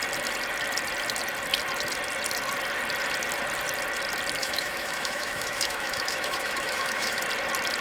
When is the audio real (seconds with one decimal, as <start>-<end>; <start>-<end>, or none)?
0.0-4.4; 7.2-7.8